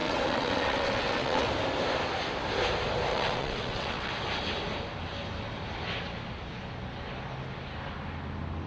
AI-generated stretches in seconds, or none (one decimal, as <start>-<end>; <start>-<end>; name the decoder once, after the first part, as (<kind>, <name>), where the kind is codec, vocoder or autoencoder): 0.0-1.5 (vocoder, WaveNeXt); 3.1-4.1